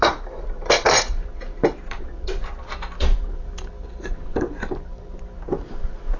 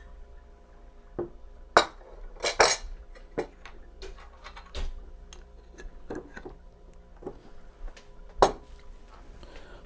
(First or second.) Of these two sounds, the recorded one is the second